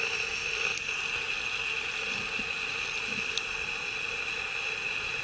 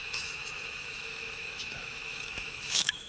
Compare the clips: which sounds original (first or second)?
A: first